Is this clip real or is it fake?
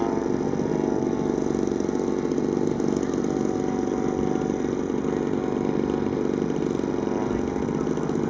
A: real